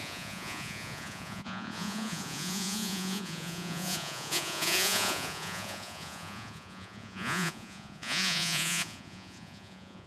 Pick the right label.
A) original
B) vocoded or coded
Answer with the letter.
B